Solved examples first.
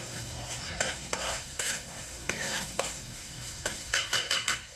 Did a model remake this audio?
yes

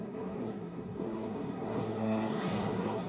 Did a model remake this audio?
yes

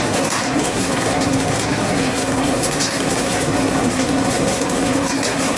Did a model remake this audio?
yes